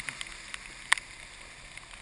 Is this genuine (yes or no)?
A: yes